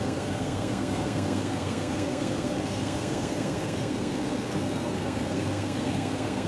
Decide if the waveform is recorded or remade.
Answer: remade